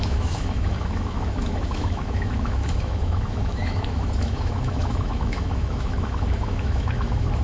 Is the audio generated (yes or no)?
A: yes